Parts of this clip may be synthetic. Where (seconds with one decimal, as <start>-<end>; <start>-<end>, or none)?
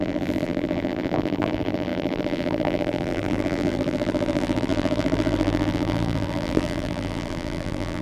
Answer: 0.0-8.0